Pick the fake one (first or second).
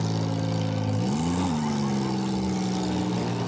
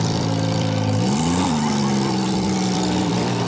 second